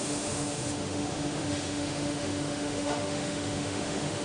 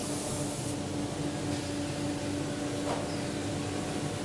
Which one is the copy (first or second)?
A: first